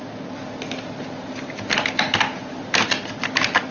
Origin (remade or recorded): recorded